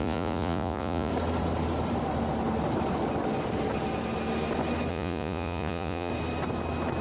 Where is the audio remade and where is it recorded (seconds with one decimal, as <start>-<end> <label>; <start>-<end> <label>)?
0.0-1.1 remade; 1.1-4.9 recorded; 4.9-6.1 remade; 6.1-7.0 recorded